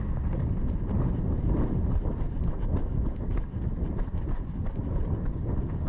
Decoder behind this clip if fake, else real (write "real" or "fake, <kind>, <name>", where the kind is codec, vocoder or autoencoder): real